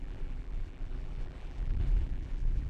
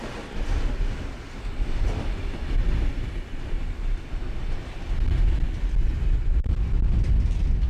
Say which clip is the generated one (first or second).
first